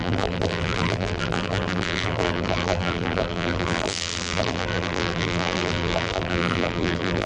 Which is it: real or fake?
fake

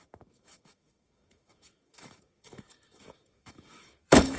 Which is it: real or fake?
fake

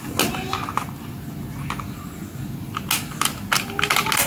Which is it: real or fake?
real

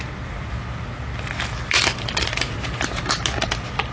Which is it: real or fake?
real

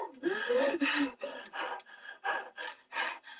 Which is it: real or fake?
real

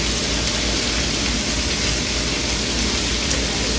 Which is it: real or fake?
real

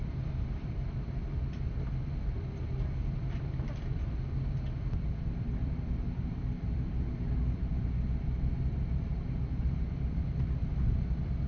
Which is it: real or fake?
fake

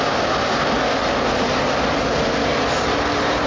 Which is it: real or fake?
real